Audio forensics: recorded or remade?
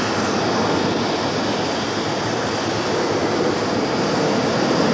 recorded